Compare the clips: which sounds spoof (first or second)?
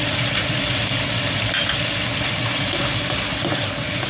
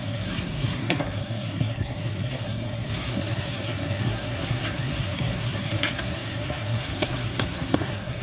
second